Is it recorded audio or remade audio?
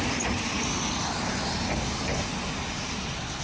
recorded